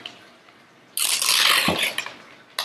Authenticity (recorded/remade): recorded